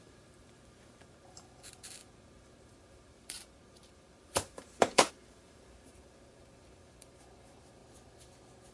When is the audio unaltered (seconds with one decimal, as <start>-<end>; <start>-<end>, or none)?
7.8-8.7

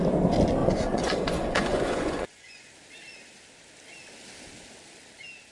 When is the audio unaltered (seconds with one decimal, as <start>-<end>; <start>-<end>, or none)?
0.0-0.6; 2.7-5.5

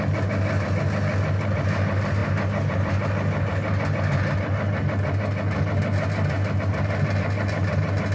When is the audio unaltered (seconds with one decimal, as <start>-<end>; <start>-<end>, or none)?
0.0-8.1